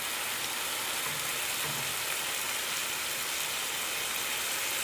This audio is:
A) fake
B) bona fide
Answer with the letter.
B